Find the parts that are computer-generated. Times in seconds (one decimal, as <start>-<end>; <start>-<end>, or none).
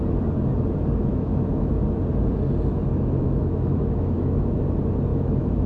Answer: 1.1-1.7; 2.9-4.6; 5.1-5.7